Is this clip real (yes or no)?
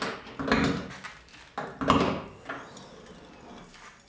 yes